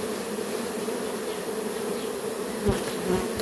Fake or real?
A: real